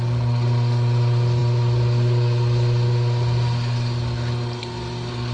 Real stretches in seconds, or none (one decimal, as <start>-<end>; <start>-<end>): 0.0-5.3